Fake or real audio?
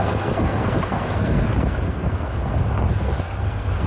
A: fake